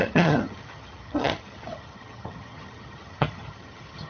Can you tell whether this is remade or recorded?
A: remade